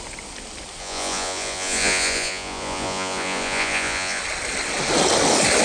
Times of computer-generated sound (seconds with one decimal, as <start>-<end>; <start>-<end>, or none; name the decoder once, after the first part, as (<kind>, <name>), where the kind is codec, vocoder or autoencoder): 0.8-4.2 (vocoder, Vocos)